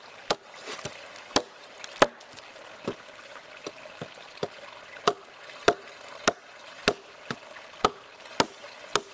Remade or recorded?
recorded